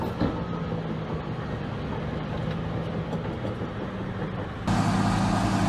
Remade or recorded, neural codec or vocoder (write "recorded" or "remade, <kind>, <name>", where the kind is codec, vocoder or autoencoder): recorded